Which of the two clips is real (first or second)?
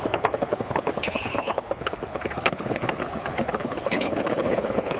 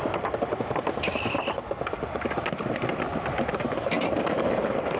second